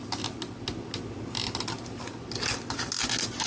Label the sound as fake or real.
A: real